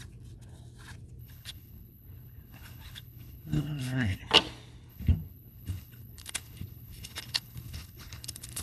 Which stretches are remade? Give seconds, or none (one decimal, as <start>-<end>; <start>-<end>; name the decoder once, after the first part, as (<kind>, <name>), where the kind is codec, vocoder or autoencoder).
1.2-4.2 (codec, HILCodec); 4.9-8.6